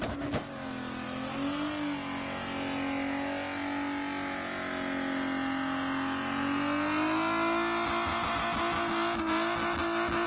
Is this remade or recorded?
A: recorded